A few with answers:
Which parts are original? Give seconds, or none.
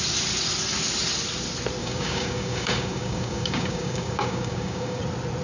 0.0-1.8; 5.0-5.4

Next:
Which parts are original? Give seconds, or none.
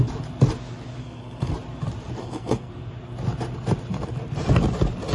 0.0-1.0; 1.5-2.2; 2.7-5.1